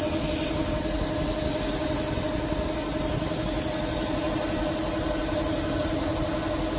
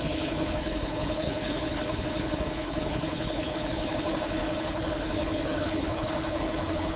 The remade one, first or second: second